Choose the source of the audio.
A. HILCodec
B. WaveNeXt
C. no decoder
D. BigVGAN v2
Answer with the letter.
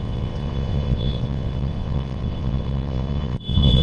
B